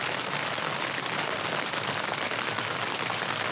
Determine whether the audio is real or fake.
real